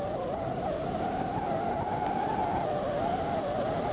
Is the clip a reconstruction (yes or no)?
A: no